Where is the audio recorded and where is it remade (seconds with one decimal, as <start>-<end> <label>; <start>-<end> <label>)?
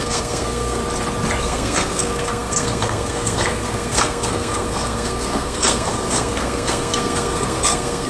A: 0.0-0.8 remade; 0.8-1.4 recorded; 1.4-8.1 remade